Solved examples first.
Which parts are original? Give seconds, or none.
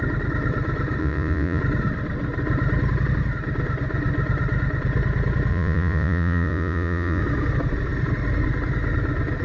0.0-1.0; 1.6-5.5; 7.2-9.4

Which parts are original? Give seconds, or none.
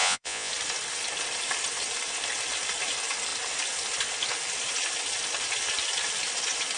0.5-6.8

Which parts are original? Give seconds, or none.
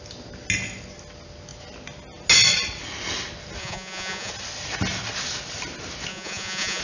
0.0-3.6; 4.3-6.1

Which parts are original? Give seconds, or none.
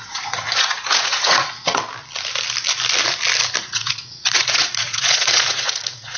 1.8-3.6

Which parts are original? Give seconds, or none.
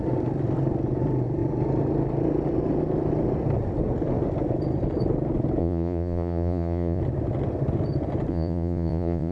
0.0-5.6; 7.0-8.3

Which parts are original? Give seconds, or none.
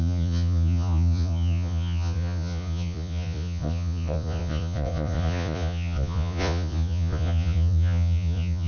none